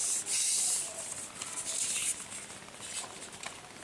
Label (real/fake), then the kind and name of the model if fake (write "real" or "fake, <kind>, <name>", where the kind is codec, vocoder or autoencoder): real